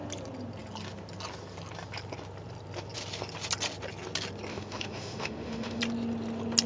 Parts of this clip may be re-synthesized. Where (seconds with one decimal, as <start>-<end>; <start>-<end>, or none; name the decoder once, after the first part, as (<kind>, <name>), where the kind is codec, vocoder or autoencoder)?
4.5-5.8 (autoencoder, DAC-VAE)